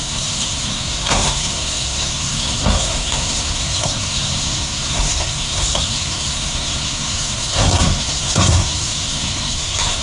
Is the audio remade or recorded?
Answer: remade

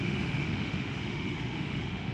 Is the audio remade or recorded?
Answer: remade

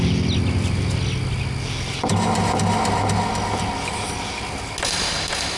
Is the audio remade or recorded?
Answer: recorded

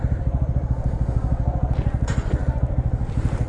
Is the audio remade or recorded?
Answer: recorded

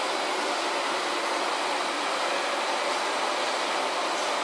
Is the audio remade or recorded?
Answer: recorded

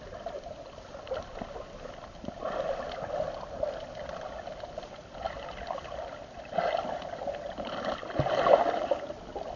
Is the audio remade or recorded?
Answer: recorded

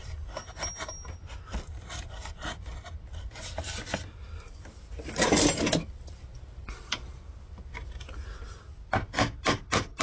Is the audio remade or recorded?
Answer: recorded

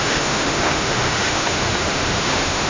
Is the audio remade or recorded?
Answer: remade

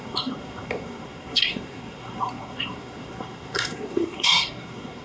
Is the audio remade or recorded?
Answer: remade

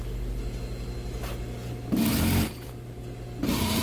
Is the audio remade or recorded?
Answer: recorded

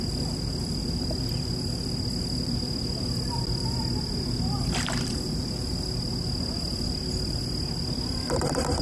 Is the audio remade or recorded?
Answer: remade